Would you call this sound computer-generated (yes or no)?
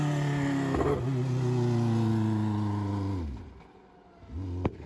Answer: no